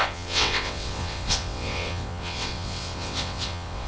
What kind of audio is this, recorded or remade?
remade